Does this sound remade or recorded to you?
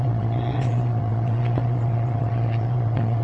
remade